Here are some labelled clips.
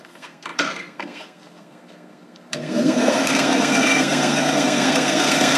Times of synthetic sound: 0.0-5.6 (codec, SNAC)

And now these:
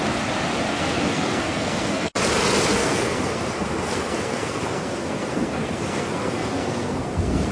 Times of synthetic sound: 0.7-2.2 (codec, SNAC); 2.8-7.5

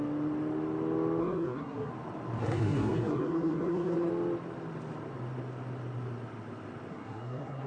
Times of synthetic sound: 1.2-1.9 (codec, SNAC); 2.4-4.1; 6.9-7.7

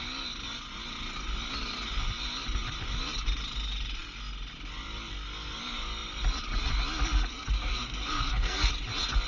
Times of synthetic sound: 7.3-8.7 (codec, SNAC)

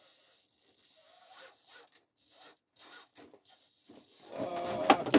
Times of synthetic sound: none

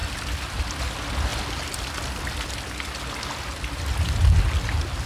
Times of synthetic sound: none